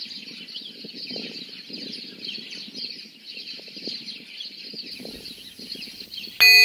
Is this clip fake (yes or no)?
no